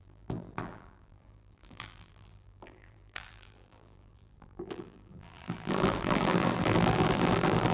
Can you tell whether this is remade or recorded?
remade